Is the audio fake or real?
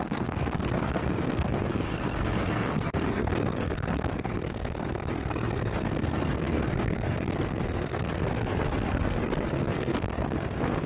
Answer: fake